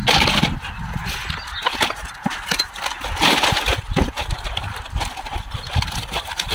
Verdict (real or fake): real